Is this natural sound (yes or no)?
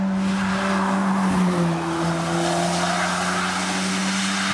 yes